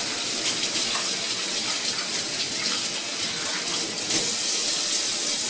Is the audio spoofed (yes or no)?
no